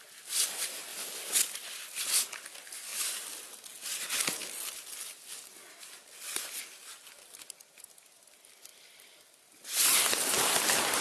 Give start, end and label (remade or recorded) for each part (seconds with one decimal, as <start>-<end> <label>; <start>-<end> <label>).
0.0-0.9 recorded; 0.9-2.0 remade; 2.0-8.7 recorded; 8.7-10.4 remade; 10.4-11.0 recorded